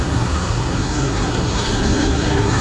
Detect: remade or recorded remade